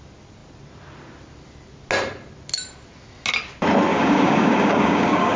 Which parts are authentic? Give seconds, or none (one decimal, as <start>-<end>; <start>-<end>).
0.0-3.9